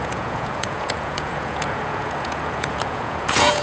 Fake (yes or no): yes